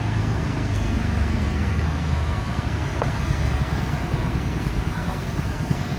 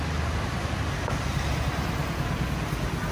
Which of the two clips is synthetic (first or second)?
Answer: first